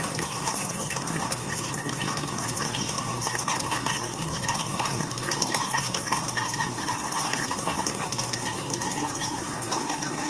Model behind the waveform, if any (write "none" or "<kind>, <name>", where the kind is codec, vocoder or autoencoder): codec, SNAC